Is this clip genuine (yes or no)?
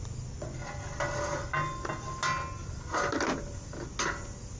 yes